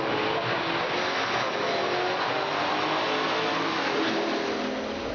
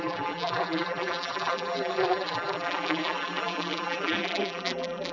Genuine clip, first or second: first